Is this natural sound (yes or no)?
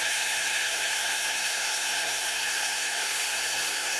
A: no